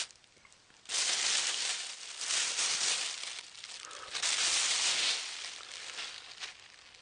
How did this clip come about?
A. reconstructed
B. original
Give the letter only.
B